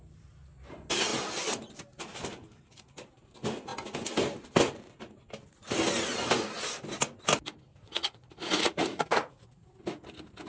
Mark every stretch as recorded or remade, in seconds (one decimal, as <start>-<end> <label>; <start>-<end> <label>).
0.0-7.7 recorded; 7.7-9.8 remade; 9.8-10.5 recorded